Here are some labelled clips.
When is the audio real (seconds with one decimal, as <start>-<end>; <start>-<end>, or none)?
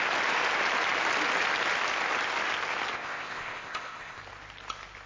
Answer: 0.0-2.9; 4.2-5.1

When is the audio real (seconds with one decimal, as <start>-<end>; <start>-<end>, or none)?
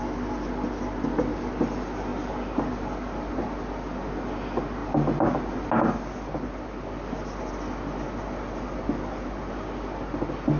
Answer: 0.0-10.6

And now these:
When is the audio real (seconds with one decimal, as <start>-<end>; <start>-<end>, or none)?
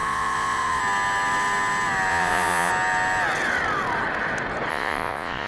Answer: 0.8-2.1; 2.7-4.7